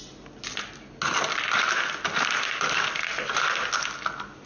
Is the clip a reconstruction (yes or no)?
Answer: no